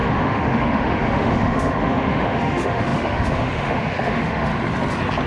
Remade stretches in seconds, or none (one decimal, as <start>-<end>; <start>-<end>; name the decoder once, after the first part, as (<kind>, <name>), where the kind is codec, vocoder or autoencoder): 0.0-4.5 (autoencoder, DAC-VAE)